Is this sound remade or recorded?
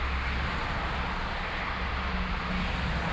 recorded